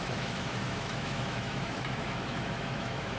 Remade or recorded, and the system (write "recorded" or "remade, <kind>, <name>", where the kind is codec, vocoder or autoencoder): remade, autoencoder, DAC-VAE